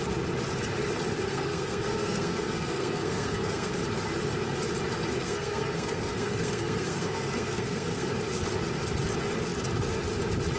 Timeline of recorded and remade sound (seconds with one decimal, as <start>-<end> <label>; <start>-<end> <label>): 0.0-1.3 recorded; 1.3-3.7 remade; 3.7-5.2 recorded; 5.2-8.1 remade; 8.1-10.6 recorded